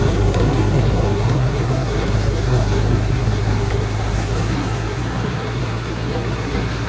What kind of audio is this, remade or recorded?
remade